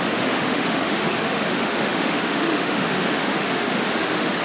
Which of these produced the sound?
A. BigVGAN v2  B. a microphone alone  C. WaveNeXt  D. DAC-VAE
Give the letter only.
D